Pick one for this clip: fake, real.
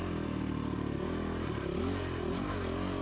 real